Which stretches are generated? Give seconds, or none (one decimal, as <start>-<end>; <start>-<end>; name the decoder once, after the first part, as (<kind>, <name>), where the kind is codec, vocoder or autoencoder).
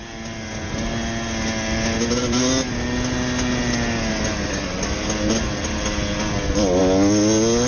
none